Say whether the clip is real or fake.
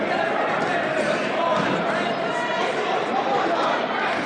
fake